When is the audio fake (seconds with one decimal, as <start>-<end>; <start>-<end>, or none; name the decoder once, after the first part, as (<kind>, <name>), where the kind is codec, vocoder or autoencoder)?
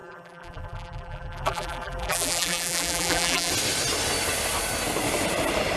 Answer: 0.0-3.5 (vocoder, BigVGAN v2)